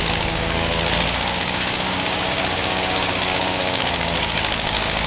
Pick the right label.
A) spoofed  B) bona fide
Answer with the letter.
A